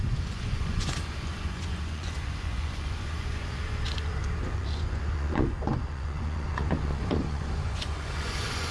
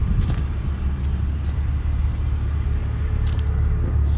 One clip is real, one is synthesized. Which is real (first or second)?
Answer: second